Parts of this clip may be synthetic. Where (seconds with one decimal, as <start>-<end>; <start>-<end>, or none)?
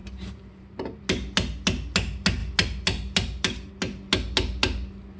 0.0-1.1